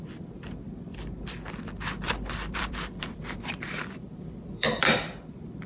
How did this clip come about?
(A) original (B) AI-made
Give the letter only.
B